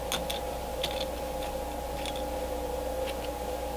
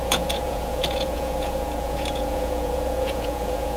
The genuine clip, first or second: first